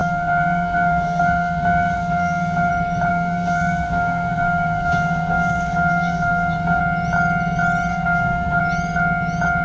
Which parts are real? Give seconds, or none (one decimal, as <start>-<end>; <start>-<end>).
2.7-3.1; 6.8-7.9; 8.6-9.6